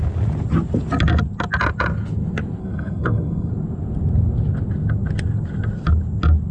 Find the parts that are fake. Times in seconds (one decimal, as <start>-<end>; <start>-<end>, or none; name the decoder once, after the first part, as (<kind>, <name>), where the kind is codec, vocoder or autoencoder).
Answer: 2.6-3.5 (codec, SNAC)